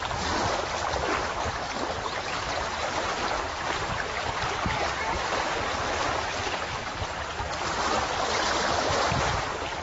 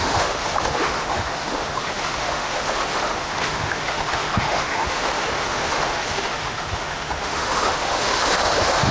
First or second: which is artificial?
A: second